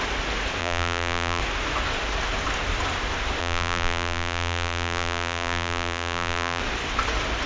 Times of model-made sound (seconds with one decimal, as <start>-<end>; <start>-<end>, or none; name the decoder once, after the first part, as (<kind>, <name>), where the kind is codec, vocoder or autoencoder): 0.6-1.4 (vocoder, BigVGAN v2); 3.4-6.6